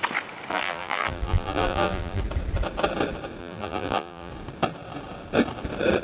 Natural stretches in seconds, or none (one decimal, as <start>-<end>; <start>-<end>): 0.0-0.5; 2.2-3.4; 4.3-6.0